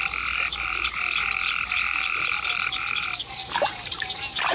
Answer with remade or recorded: remade